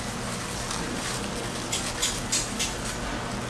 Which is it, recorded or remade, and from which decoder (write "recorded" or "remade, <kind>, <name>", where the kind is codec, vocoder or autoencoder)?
recorded